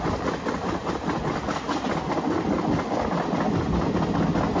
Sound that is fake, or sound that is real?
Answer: real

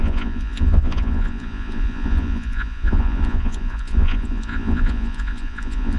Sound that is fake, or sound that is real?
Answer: fake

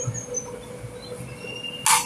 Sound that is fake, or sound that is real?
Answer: real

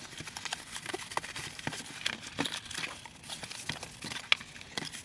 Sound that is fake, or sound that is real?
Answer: real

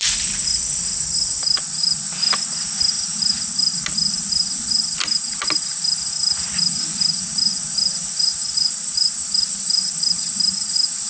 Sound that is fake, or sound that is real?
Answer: real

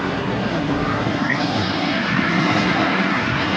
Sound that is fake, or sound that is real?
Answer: fake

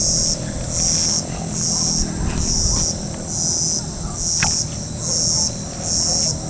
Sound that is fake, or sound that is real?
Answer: real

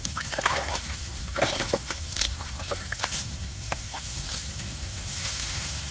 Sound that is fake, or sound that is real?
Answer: fake